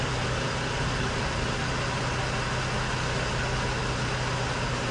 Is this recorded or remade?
recorded